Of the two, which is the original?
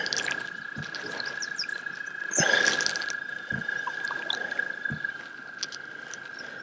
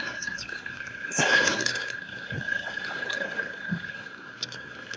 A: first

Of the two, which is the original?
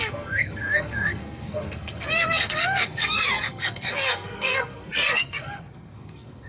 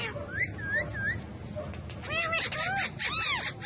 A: second